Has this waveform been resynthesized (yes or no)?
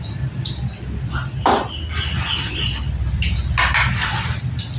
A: no